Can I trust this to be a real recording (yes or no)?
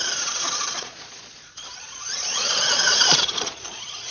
no